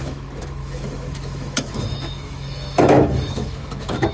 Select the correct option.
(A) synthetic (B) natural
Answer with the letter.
A